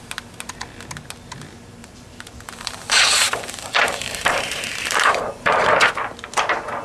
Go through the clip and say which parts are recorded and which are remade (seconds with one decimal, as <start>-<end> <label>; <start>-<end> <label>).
0.0-1.8 recorded; 1.8-5.9 remade; 5.9-6.8 recorded